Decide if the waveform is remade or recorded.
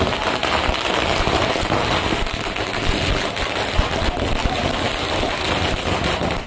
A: recorded